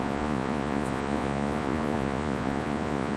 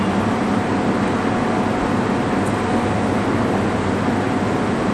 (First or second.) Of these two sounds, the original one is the second